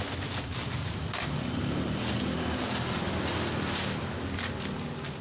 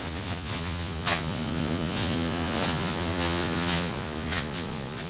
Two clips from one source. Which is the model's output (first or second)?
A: second